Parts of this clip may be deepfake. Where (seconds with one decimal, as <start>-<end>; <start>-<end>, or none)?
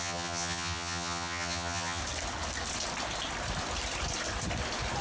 0.0-2.0